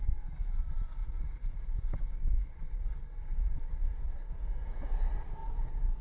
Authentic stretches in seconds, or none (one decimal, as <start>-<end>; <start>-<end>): 0.0-1.0; 2.0-3.9; 4.9-5.4